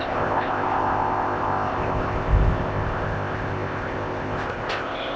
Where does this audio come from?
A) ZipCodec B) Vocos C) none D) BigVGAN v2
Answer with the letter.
A